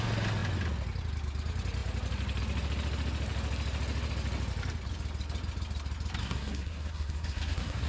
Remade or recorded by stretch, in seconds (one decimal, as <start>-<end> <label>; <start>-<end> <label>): 0.0-6.2 recorded; 6.2-7.9 remade